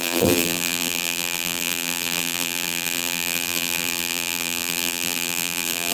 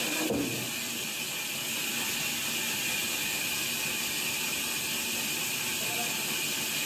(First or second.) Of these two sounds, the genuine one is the second